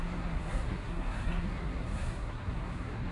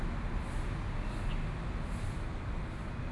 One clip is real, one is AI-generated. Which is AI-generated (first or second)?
first